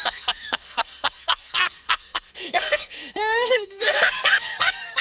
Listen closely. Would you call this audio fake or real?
fake